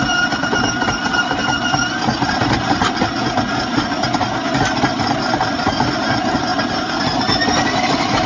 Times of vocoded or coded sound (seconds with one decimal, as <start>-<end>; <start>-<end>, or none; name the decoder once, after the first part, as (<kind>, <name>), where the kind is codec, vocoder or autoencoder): 6.5-7.8 (vocoder, BigVGAN v2)